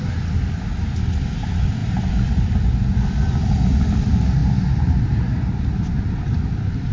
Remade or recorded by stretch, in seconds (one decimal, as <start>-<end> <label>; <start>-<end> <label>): 0.0-4.4 recorded; 4.4-6.9 remade